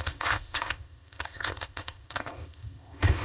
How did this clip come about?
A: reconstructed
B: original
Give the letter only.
A